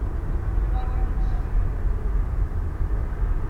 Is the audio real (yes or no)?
yes